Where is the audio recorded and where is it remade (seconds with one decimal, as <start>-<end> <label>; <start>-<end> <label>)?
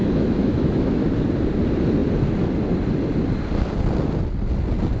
0.0-1.0 remade; 1.0-5.0 recorded